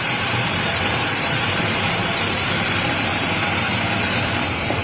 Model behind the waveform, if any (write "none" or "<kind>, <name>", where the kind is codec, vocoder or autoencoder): vocoder, BigVGAN v2